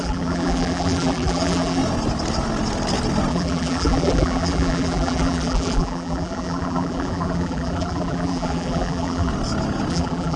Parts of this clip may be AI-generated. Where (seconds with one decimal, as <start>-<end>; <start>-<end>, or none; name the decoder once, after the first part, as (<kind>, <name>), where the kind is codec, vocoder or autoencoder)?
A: 0.0-1.8 (vocoder, BigVGAN v2); 3.3-9.3; 9.9-10.4